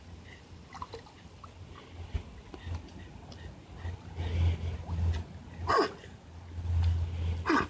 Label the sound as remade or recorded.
recorded